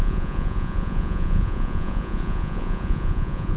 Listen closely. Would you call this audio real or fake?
fake